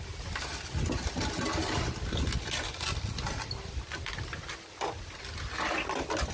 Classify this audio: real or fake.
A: real